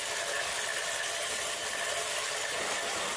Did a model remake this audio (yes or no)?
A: no